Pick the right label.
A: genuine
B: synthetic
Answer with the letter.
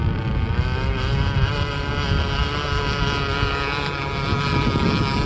A